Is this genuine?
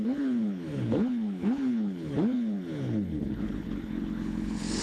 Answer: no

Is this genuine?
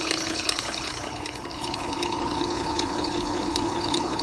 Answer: no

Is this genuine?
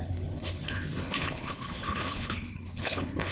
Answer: no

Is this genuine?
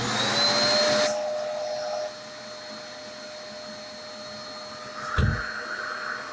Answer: yes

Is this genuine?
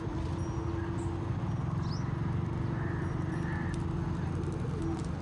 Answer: yes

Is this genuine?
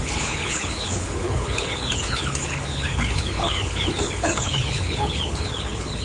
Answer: no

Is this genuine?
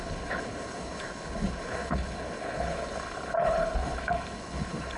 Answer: no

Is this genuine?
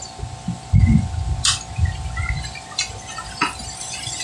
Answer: yes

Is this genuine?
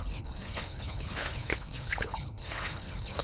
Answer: no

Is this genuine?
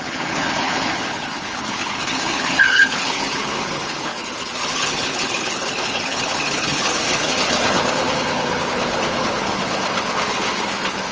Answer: no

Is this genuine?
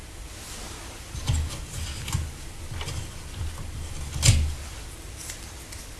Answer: yes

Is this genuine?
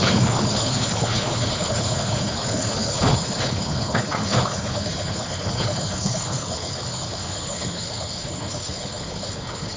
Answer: no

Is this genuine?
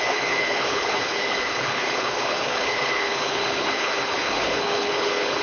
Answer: no